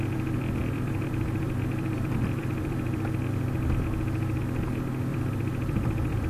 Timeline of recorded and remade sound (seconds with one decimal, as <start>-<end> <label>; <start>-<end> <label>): 0.0-0.6 recorded; 0.6-3.0 remade; 3.0-5.1 recorded; 5.1-6.3 remade